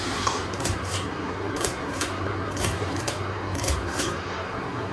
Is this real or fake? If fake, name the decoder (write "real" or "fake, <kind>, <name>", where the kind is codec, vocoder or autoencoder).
fake, codec, SNAC